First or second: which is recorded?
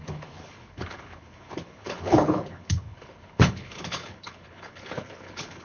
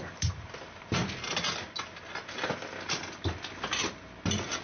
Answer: second